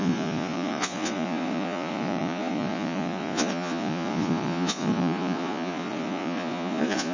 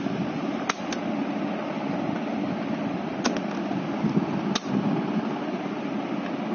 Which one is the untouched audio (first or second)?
second